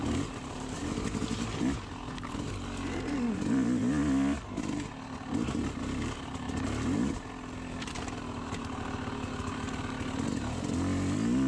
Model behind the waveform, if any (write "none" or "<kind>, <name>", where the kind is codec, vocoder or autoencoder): none